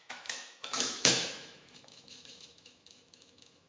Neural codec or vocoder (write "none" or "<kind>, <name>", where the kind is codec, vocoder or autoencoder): autoencoder, DAC-VAE